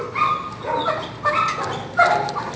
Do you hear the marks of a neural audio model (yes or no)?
no